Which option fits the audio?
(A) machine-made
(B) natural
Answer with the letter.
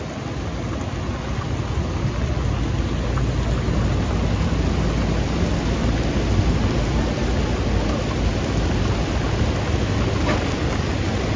B